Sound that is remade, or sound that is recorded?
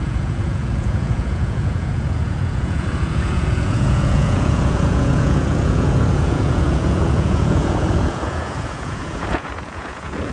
remade